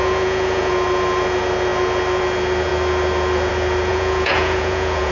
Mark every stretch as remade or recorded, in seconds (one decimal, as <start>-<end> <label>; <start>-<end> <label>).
0.0-0.7 remade; 0.7-3.9 recorded; 3.9-5.1 remade